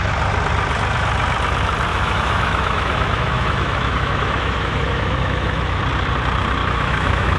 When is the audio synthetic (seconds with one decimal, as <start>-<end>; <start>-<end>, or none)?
1.9-5.8; 6.6-7.4